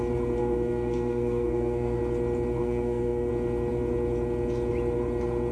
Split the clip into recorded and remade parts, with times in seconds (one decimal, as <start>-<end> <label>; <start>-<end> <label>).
0.0-0.4 recorded; 0.4-2.0 remade; 2.0-2.6 recorded; 2.6-3.3 remade; 3.3-5.5 recorded